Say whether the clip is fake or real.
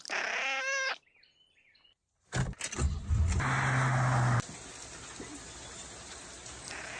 real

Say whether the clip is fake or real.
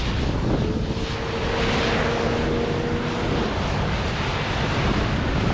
real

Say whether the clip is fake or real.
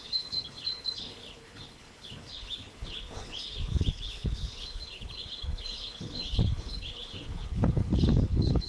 fake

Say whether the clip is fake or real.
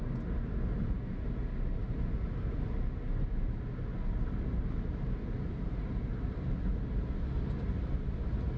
real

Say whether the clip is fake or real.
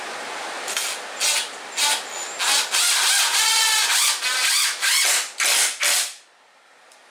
real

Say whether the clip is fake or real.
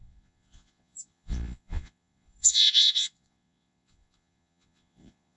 fake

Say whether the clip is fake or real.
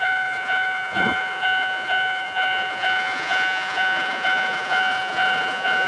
fake